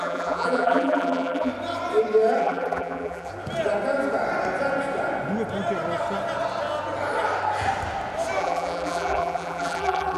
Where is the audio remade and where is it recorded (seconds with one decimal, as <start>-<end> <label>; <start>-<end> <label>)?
0.0-1.5 remade; 1.5-2.4 recorded; 2.4-3.3 remade; 3.3-8.4 recorded; 8.4-10.2 remade